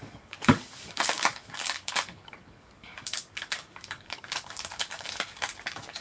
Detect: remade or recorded remade